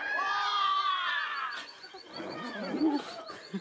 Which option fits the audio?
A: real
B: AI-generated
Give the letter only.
B